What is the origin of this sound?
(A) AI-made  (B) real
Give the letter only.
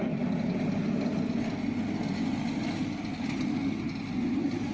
B